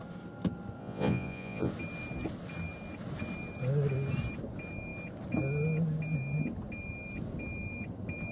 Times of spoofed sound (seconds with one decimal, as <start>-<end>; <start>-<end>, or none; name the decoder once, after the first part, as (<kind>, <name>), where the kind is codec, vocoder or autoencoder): 0.8-1.7 (vocoder, Vocos)